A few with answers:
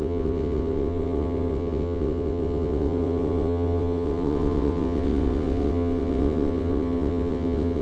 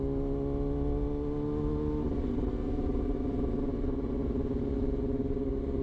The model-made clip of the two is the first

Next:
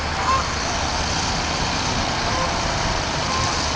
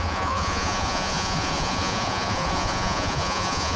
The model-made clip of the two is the second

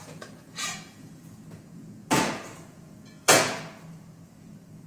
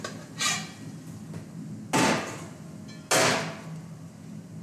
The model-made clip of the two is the first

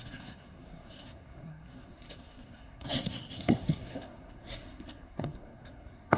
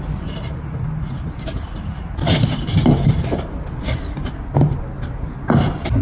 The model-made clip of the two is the first